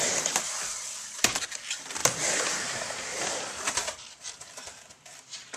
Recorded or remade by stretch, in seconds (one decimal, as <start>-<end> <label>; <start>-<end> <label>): 0.0-5.6 remade